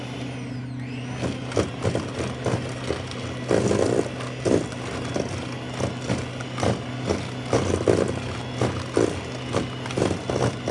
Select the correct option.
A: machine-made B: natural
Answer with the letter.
B